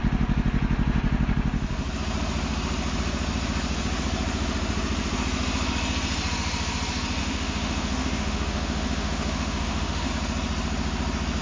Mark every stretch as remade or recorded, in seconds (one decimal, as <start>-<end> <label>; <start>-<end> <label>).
0.0-7.2 recorded; 7.2-10.1 remade; 10.1-11.4 recorded